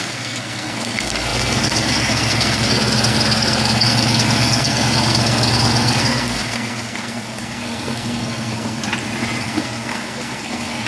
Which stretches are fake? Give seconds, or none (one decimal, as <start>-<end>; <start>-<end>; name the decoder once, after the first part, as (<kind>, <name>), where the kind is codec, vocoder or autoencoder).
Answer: 0.0-8.8 (codec, SNAC); 9.4-10.9